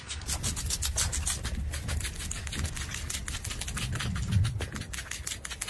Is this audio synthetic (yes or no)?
no